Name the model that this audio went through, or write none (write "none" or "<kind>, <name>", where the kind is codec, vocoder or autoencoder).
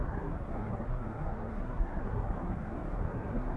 codec, SNAC